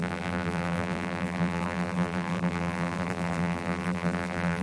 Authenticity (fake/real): fake